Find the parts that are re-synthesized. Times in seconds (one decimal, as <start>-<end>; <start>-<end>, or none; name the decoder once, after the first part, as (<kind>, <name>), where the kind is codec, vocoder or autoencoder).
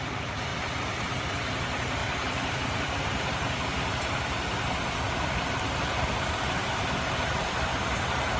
2.0-5.6 (vocoder, BigVGAN v2); 6.6-7.2; 7.7-8.4